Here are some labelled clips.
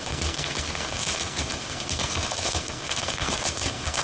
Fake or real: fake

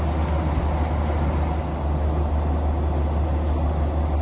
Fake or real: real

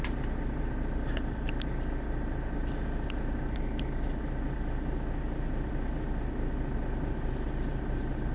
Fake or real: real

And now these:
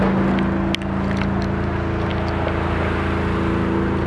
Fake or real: real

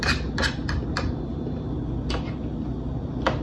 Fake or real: real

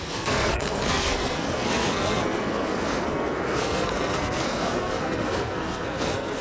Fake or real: fake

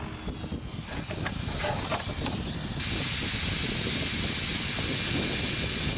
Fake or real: real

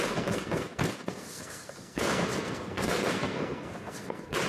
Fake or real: fake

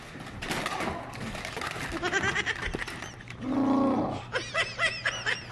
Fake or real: real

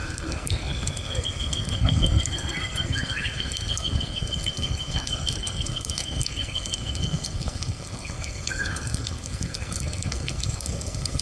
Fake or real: fake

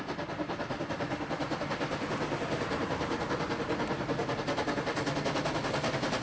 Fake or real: real